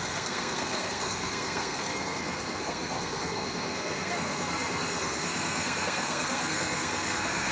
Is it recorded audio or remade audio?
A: remade